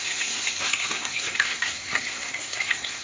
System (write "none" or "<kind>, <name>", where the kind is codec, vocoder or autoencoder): codec, SNAC